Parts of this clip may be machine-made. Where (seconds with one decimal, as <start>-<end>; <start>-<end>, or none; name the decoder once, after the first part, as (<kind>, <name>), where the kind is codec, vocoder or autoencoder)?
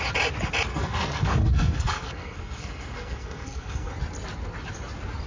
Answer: 0.7-3.9 (codec, SNAC)